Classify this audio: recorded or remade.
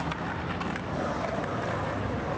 recorded